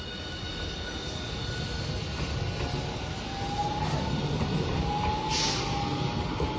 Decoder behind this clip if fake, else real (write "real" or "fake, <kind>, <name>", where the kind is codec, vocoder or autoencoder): real